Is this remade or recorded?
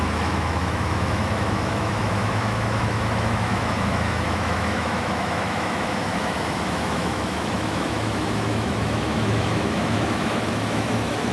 remade